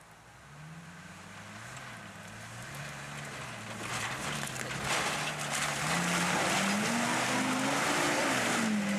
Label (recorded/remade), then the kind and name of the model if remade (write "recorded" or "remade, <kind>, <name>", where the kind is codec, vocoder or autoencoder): recorded